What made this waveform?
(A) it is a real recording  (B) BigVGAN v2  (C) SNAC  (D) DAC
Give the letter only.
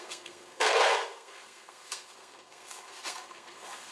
C